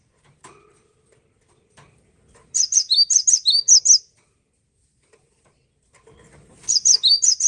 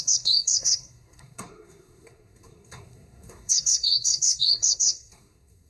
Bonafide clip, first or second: first